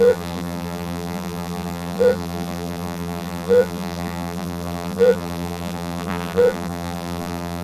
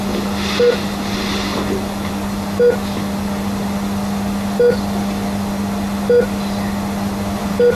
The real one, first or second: second